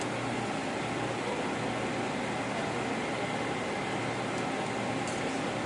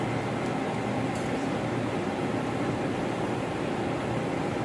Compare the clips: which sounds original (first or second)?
first